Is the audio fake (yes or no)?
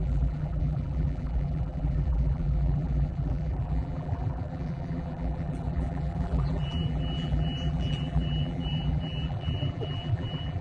yes